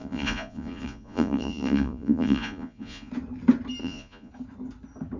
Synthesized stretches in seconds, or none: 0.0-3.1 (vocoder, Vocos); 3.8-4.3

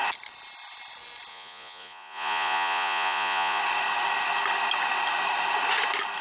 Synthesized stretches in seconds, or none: 1.3-3.6 (vocoder, Vocos)

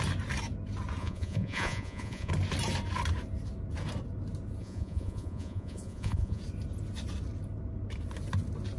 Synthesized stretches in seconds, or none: 1.0-2.3 (vocoder, Vocos); 4.6-6.4

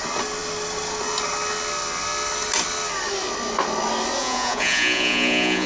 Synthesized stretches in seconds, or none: 4.2-5.7 (vocoder, Vocos)

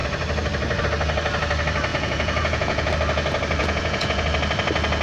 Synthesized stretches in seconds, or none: 1.9-2.9 (vocoder, Vocos); 3.6-4.2